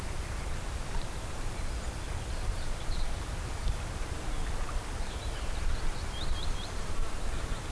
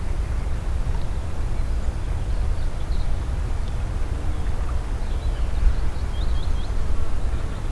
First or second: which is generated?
first